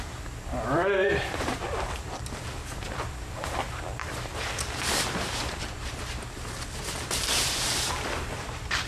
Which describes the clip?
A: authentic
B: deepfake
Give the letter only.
B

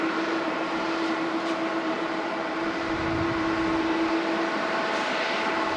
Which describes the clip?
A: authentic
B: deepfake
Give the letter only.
B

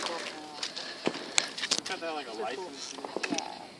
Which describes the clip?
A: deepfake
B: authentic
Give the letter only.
B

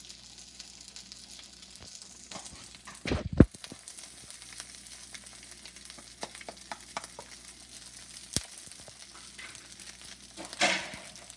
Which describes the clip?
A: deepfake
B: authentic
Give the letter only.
B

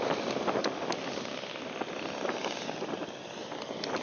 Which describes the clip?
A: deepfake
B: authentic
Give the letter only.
B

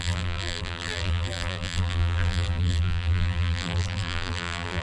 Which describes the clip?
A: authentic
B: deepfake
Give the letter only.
B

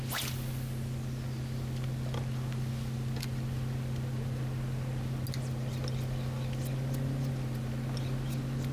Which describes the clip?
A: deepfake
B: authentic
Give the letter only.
B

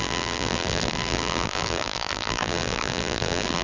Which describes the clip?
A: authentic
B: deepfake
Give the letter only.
B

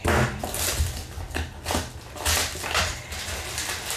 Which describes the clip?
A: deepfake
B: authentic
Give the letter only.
B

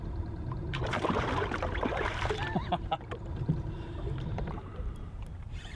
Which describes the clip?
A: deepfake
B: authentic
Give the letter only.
A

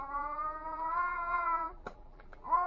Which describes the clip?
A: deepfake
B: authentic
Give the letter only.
A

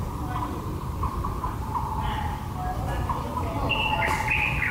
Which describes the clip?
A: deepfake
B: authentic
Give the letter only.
B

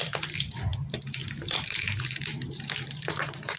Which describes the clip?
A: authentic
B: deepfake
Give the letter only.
B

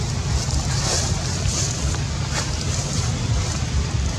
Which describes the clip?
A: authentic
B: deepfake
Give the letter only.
A